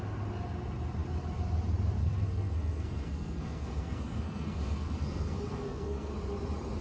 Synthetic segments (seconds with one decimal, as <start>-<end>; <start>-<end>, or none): 2.0-6.1